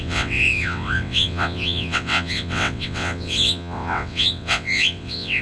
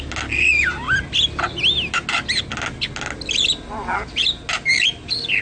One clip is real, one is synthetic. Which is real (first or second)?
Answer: second